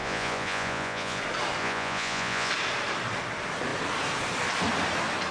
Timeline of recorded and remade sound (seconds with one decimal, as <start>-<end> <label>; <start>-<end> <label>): 0.0-1.2 remade; 1.2-1.6 recorded; 1.6-2.5 remade; 2.5-5.3 recorded

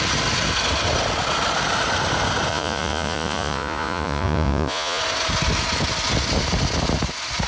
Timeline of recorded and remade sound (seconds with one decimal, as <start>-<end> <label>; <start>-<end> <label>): 0.0-2.5 recorded; 2.5-5.0 remade; 5.0-7.5 recorded

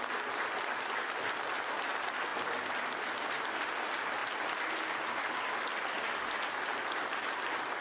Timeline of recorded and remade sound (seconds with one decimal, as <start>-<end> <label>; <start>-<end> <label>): 0.0-7.8 recorded

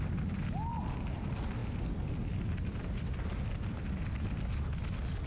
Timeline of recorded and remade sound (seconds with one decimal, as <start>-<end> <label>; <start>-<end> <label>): 0.0-5.3 recorded

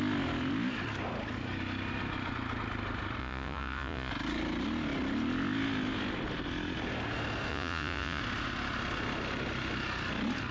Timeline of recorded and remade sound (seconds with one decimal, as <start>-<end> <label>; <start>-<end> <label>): 0.0-3.2 recorded; 3.2-4.1 remade; 4.1-7.5 recorded; 7.5-8.2 remade; 8.2-10.5 recorded